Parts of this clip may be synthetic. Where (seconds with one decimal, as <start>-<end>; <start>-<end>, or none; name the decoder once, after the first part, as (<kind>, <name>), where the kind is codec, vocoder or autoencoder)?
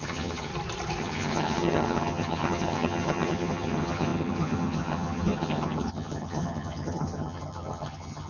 0.0-0.5 (vocoder, HiFi-GAN); 1.0-8.3